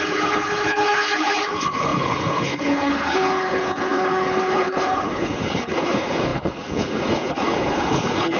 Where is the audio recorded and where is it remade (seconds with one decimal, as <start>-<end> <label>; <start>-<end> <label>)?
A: 0.0-8.4 remade